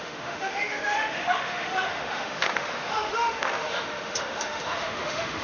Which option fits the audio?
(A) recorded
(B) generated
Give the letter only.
B